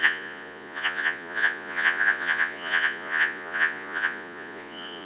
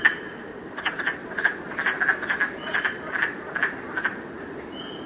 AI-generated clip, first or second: first